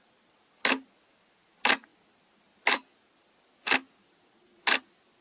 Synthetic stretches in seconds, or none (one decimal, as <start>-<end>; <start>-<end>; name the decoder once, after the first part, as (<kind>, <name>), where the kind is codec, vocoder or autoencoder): none